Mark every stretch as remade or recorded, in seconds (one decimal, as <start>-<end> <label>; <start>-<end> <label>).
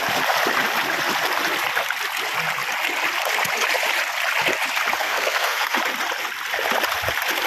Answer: 0.0-5.0 recorded; 5.0-5.8 remade; 5.8-7.5 recorded